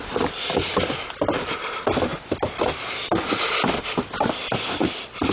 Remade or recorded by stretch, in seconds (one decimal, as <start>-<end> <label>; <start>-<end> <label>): 0.0-5.3 recorded